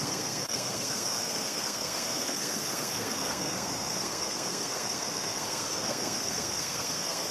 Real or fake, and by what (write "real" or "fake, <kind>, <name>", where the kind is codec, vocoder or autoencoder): fake, codec, SNAC